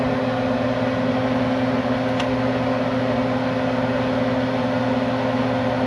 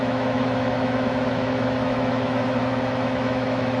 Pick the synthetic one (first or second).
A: second